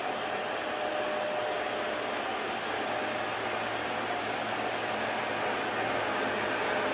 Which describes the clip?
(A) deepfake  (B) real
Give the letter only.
B